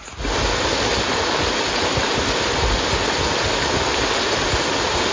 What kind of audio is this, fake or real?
real